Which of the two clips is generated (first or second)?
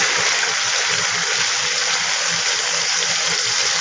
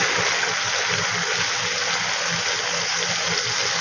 first